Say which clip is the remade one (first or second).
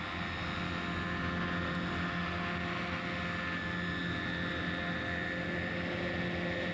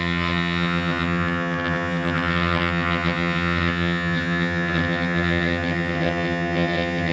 second